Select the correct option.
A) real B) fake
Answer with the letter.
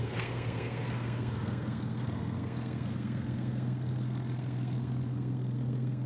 B